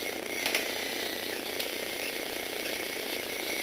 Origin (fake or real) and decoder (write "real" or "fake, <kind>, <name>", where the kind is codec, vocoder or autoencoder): real